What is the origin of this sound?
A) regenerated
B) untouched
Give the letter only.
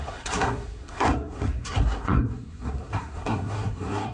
A